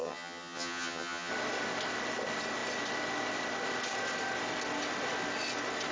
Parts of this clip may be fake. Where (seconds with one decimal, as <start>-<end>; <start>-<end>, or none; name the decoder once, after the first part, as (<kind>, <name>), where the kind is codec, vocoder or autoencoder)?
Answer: 0.0-1.3 (vocoder, HiFi-GAN)